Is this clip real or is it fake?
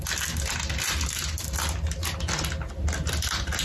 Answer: real